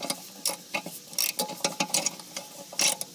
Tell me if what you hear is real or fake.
real